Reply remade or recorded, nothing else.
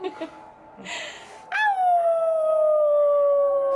recorded